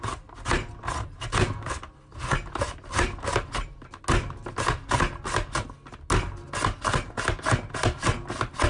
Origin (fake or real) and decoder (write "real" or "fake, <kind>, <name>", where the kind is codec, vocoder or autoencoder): real